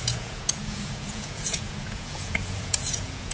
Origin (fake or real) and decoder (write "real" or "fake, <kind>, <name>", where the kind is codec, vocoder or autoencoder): fake, vocoder, Vocos